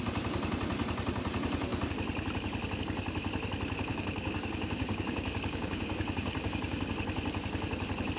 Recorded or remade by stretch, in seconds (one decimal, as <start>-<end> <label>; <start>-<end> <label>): 0.0-3.9 recorded; 3.9-6.9 remade; 6.9-8.2 recorded